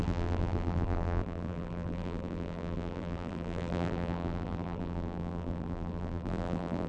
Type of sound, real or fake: fake